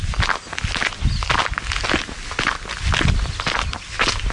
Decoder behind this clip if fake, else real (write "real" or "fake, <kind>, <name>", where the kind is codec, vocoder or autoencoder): real